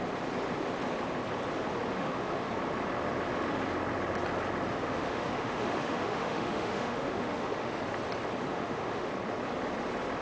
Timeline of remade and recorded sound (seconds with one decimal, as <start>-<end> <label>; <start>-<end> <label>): 0.0-2.0 recorded; 2.0-2.5 remade; 2.5-4.7 recorded; 4.7-7.8 remade; 7.8-8.5 recorded; 8.5-9.1 remade; 9.1-10.2 recorded